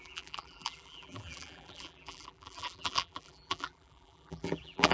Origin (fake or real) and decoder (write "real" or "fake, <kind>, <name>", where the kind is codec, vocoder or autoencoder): fake, vocoder, BigVGAN v2